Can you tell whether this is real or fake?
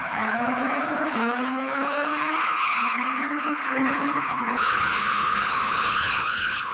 fake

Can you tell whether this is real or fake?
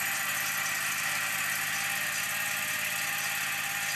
real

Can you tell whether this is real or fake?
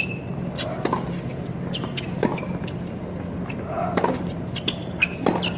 real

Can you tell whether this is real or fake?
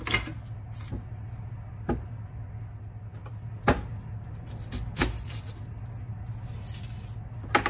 real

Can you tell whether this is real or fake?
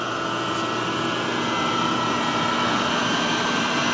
real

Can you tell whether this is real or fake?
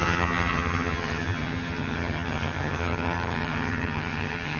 fake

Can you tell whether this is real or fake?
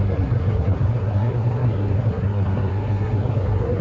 fake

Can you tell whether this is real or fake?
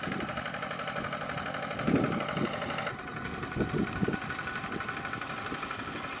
real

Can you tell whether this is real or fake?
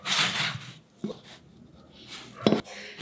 real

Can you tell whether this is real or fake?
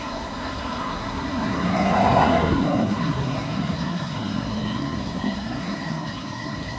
fake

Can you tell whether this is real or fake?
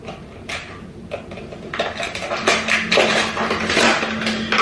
real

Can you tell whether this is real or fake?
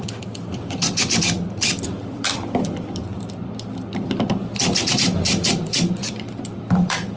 fake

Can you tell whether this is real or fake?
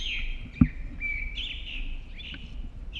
real